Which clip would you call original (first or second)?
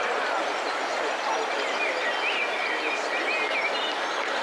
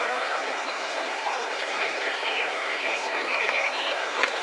first